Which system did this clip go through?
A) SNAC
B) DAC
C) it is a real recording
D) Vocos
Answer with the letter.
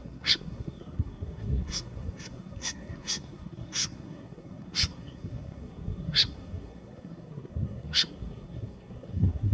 A